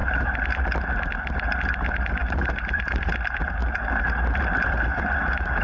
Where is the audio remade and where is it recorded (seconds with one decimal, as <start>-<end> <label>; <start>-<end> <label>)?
0.0-0.5 remade; 0.5-2.2 recorded; 2.2-3.1 remade; 3.1-5.6 recorded